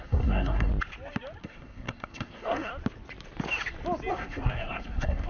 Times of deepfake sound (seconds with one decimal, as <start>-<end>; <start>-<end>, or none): 0.0-0.7; 1.4-2.7; 4.1-5.3